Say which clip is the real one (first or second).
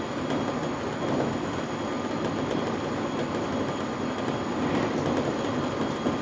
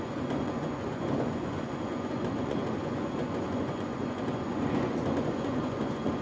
first